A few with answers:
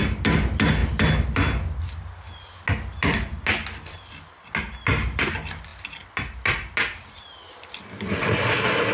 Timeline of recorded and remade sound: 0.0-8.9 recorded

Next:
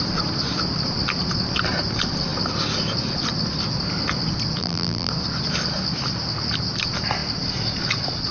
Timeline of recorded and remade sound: 0.0-4.6 recorded; 4.6-5.1 remade; 5.1-8.3 recorded

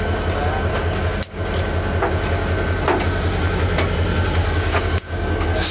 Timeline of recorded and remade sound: 0.0-0.7 recorded; 0.7-1.4 remade; 1.4-4.4 recorded; 4.4-5.7 remade

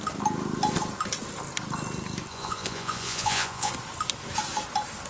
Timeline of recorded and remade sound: 0.0-2.3 recorded; 2.3-3.7 remade; 3.7-5.1 recorded

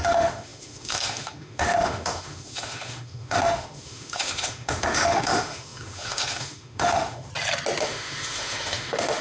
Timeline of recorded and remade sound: 0.0-7.3 remade; 7.3-7.8 recorded; 7.8-9.2 remade

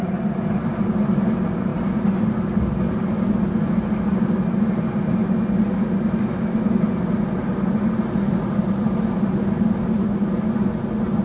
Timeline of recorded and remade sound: 0.0-11.2 recorded